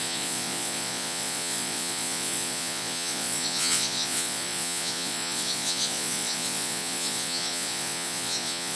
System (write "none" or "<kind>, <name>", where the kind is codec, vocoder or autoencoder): vocoder, Vocos